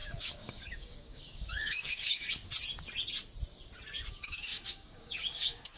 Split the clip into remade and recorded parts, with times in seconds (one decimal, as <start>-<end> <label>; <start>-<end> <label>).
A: 0.0-2.4 remade; 2.4-4.1 recorded; 4.1-5.8 remade